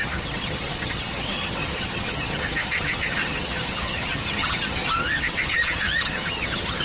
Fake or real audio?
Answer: fake